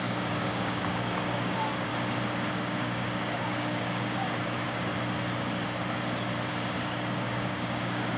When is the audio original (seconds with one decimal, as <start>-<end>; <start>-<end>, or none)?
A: 1.9-2.5; 4.9-6.5